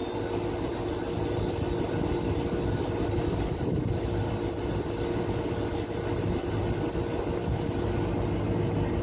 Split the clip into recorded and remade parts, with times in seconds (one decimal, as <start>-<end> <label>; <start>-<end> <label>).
0.0-9.0 recorded